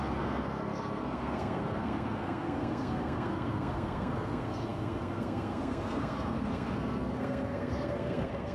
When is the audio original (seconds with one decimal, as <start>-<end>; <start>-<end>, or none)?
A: none